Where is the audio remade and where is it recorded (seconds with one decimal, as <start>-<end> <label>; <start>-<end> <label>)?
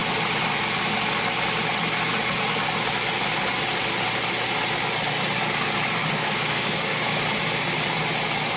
0.0-6.0 recorded; 6.0-7.2 remade; 7.2-8.6 recorded